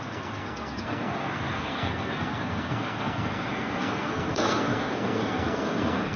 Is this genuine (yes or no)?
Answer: no